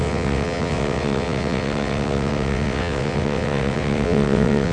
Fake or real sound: fake